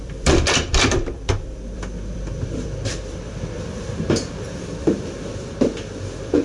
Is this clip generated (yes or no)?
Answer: yes